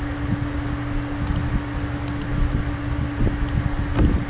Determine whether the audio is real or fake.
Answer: real